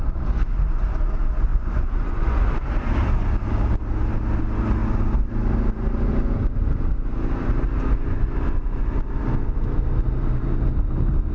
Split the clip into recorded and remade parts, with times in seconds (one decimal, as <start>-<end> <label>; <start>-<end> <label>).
0.0-1.5 recorded; 1.5-2.5 remade; 2.5-11.3 recorded